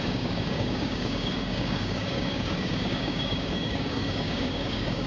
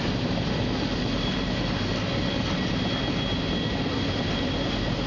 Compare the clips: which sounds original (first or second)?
second